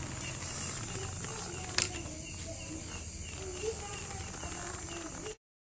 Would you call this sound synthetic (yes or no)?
no